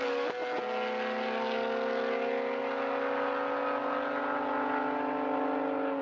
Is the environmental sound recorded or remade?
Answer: recorded